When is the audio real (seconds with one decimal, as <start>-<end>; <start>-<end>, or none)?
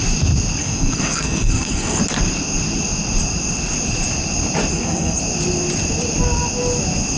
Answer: 0.0-0.6; 2.0-4.7; 5.2-7.2